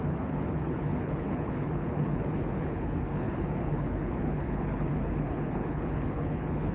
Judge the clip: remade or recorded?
remade